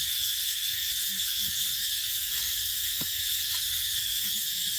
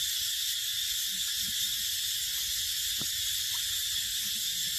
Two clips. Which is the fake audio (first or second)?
first